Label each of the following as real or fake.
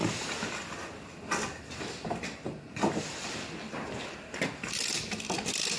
real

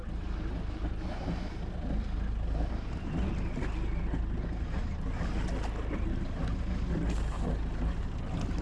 real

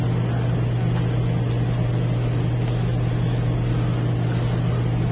real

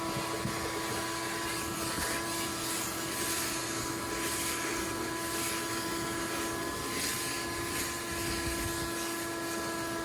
real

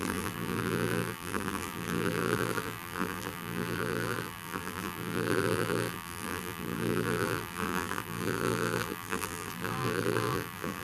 fake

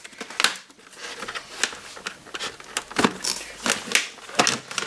real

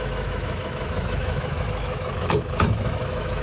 fake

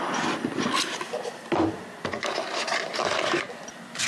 real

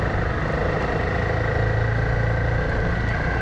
real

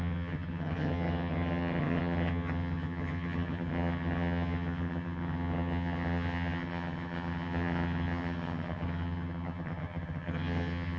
fake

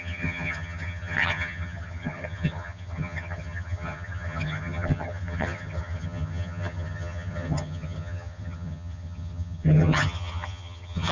fake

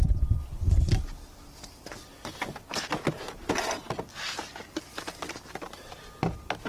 real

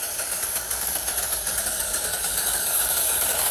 fake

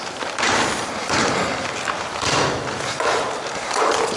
fake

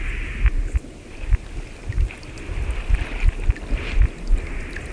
real